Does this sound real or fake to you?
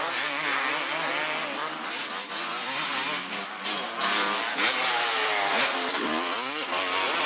real